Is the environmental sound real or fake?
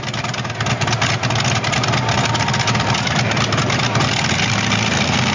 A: real